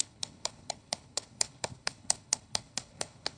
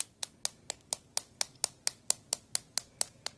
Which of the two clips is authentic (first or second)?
second